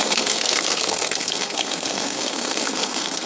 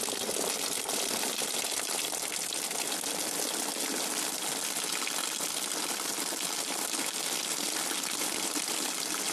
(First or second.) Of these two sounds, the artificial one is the first